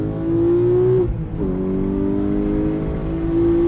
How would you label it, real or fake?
real